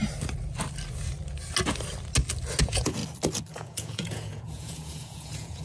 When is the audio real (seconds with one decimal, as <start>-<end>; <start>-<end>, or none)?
0.0-2.6; 3.0-3.5